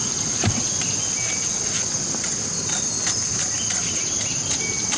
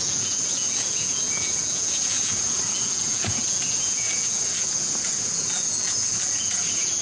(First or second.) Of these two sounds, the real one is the first